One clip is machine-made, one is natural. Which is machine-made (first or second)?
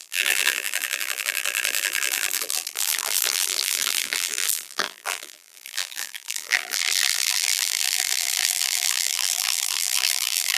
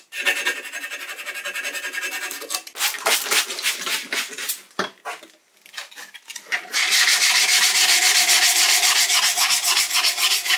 first